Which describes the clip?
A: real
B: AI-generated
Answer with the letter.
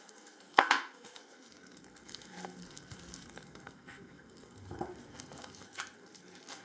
B